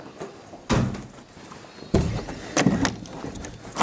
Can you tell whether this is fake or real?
real